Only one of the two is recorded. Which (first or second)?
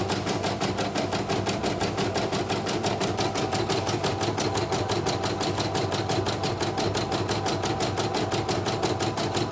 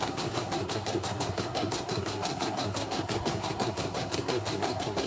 first